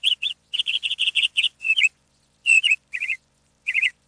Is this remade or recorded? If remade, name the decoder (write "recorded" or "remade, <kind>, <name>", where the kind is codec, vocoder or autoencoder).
remade, vocoder, Vocos